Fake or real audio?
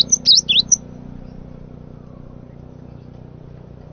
real